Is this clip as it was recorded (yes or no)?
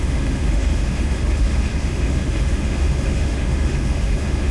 no